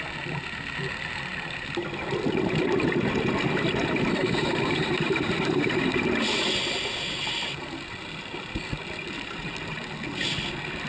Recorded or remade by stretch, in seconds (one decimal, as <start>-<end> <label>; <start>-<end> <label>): 0.0-10.9 recorded

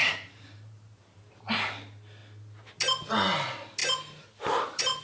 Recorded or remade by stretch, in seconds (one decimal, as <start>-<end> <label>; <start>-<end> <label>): 0.0-1.4 remade; 1.4-5.0 recorded

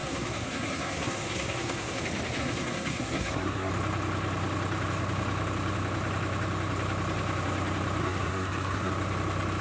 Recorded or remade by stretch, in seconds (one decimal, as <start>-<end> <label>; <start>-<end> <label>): 0.0-2.0 remade; 2.0-2.4 recorded; 2.4-3.7 remade; 3.7-8.0 recorded; 8.0-8.9 remade; 8.9-9.6 recorded

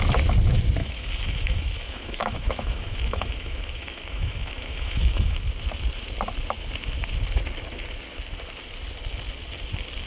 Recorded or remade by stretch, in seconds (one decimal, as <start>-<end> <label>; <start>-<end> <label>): 0.0-0.8 recorded; 0.8-5.5 remade; 5.5-10.1 recorded

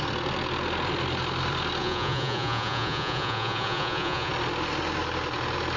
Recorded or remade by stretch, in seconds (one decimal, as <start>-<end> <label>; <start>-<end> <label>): 0.0-1.8 recorded; 1.8-4.3 remade; 4.3-5.8 recorded

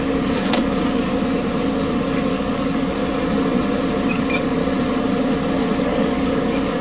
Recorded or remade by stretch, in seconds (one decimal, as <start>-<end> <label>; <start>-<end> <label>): 0.0-1.1 remade; 1.1-2.3 recorded; 2.3-3.0 remade; 3.0-4.1 recorded; 4.1-4.6 remade; 4.6-5.8 recorded; 5.8-6.8 remade